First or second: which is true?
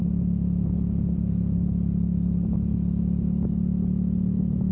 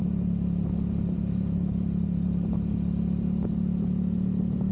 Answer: first